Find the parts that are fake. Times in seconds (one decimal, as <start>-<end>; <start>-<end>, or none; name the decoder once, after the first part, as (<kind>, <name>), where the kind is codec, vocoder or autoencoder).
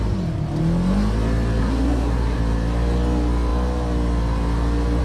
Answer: 1.6-2.4 (codec, SNAC)